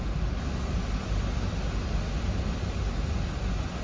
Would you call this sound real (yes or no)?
yes